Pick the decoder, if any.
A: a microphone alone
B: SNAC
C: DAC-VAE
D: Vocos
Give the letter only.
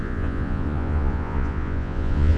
D